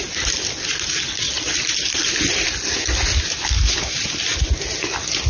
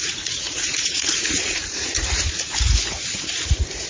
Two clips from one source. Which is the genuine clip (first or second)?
first